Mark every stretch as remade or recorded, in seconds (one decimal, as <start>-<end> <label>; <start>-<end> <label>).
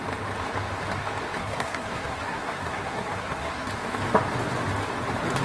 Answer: 0.0-1.4 recorded; 1.4-3.7 remade; 3.7-5.4 recorded